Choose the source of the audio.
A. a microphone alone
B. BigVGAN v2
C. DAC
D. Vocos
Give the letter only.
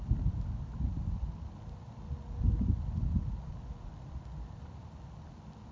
A